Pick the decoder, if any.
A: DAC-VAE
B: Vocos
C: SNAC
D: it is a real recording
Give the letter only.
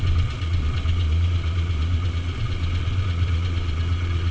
B